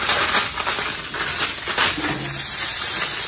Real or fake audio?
real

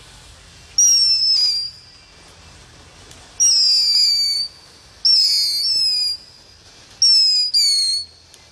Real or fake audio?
real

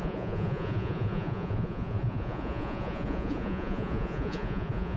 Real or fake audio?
fake